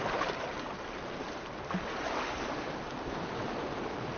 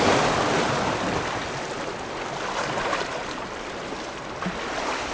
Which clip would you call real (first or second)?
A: second